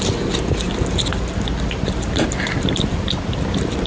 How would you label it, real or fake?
real